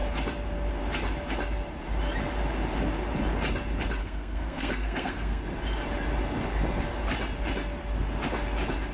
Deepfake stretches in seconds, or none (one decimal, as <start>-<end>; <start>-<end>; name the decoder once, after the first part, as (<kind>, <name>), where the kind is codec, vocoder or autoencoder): 4.0-5.4 (codec, SNAC)